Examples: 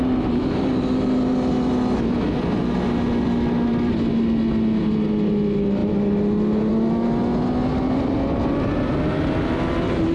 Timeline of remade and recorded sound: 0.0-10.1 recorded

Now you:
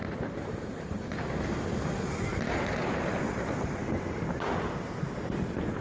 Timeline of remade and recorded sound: 0.0-1.1 remade; 1.1-2.3 recorded; 2.3-2.8 remade; 2.8-5.8 recorded